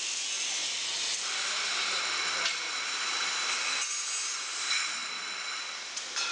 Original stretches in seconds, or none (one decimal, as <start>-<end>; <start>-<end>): 0.0-6.3